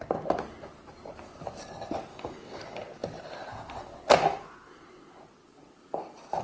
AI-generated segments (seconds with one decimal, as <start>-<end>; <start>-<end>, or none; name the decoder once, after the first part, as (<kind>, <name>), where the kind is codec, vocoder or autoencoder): 2.1-2.6 (codec, DAC)